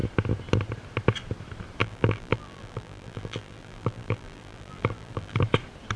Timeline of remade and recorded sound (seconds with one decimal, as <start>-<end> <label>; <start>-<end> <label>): 0.0-1.8 recorded; 1.8-5.4 remade; 5.4-6.0 recorded